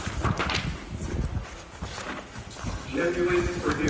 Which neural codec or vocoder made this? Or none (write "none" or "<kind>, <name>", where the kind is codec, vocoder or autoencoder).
none